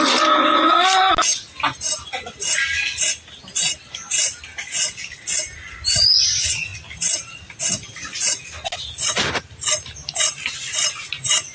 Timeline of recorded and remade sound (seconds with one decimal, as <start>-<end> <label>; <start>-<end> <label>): 0.0-11.5 recorded